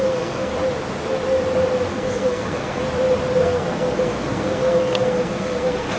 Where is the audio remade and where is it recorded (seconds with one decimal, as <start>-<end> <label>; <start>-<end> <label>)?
0.0-0.5 remade; 0.5-1.9 recorded; 1.9-2.8 remade; 2.8-3.4 recorded; 3.4-6.0 remade

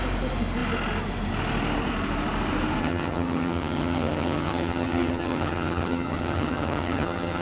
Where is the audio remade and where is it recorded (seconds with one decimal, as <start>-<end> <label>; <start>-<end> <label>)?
0.0-2.8 recorded; 2.8-7.4 remade